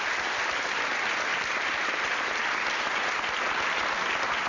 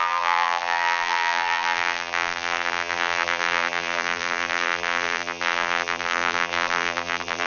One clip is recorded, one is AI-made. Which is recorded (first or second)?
first